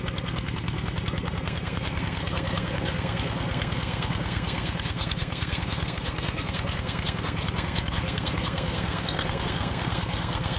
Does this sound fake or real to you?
fake